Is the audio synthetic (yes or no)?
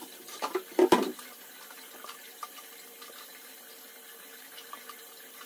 yes